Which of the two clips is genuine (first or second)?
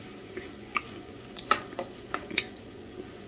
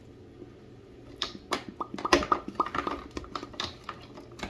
second